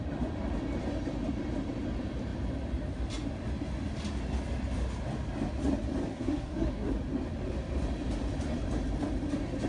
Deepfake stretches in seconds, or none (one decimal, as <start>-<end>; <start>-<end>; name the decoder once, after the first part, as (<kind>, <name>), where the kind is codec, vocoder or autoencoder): 6.1-6.9 (codec, SNAC)